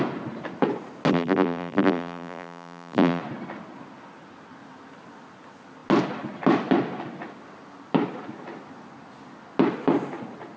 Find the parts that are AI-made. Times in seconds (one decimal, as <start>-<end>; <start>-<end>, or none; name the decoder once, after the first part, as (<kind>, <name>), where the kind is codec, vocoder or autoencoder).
1.1-3.2 (vocoder, BigVGAN v2)